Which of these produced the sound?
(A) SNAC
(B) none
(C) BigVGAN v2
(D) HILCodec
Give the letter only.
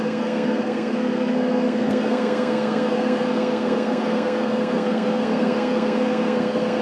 A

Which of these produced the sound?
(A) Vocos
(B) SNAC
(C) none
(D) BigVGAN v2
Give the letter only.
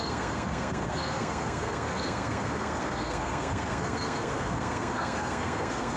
B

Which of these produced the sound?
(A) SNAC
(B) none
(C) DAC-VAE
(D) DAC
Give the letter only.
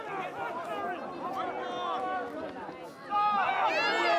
B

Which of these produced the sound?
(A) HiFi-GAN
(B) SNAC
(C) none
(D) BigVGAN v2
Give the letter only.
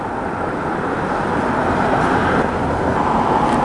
C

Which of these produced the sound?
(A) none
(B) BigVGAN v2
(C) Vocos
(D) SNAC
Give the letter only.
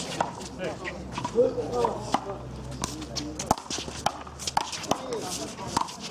A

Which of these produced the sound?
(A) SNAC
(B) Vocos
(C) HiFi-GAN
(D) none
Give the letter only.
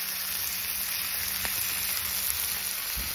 D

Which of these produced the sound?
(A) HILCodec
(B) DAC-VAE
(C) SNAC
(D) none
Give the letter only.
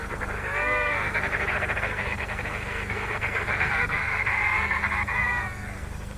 C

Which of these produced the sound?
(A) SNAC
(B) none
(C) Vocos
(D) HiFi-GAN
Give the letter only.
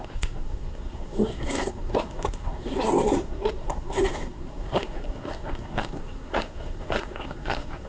A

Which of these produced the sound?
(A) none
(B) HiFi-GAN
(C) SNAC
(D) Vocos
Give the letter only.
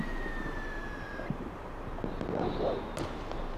A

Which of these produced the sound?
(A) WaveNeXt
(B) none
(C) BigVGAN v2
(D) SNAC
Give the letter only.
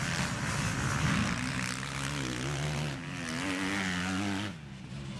B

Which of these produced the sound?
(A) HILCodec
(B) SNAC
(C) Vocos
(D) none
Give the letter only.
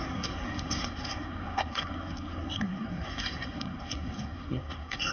B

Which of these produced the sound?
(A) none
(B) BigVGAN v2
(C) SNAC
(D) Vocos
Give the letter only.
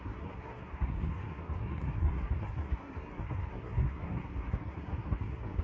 C